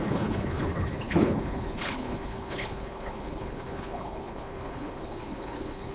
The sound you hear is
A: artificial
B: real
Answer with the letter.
A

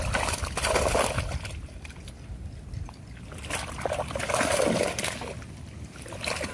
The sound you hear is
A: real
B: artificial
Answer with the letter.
A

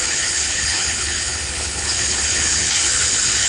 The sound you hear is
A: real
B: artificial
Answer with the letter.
B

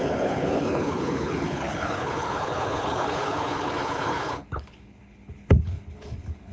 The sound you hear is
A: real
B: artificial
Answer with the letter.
B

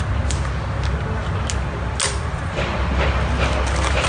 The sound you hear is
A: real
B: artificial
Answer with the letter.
A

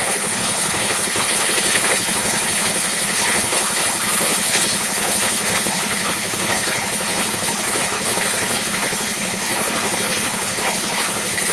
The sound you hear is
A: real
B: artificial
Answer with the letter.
B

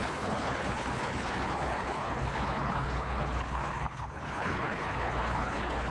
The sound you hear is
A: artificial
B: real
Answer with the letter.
A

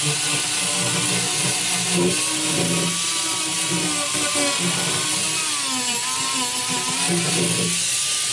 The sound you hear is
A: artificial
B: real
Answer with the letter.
B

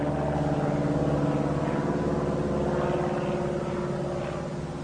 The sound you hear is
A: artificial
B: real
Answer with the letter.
B